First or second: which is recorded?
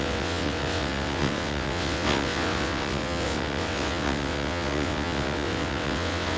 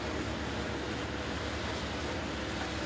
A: second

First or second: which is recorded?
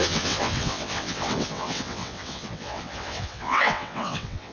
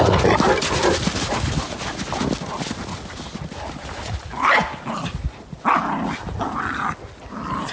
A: second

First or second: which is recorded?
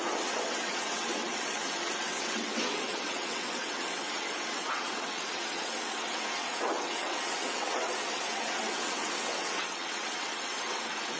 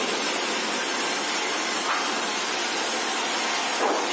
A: second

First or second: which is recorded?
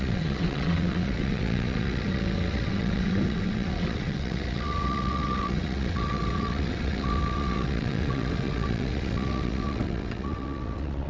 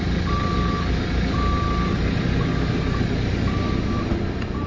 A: second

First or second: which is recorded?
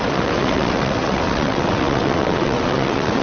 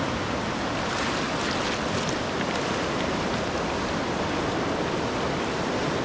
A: second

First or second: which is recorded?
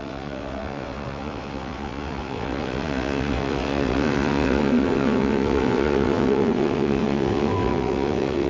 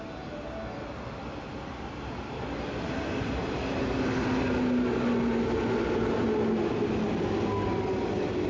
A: second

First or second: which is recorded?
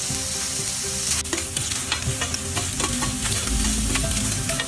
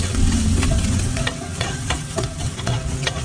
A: first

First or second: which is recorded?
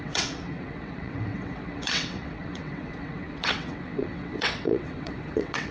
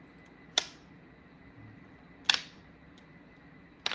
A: second